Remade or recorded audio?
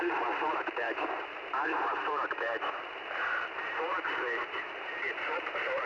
remade